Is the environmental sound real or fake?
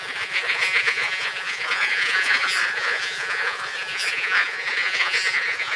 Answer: fake